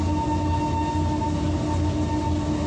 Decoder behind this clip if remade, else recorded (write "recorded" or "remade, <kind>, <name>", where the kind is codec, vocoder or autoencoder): recorded